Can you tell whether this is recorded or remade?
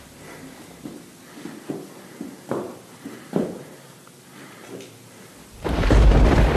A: remade